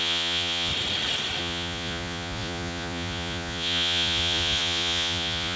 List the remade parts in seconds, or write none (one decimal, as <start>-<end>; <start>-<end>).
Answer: 0.0-0.7; 1.4-5.6